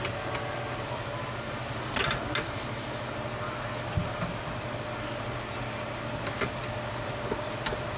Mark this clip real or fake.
real